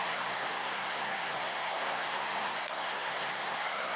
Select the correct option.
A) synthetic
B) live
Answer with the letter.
A